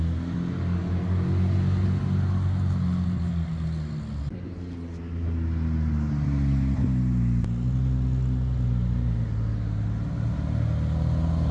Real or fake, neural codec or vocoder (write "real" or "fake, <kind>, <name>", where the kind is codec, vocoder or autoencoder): real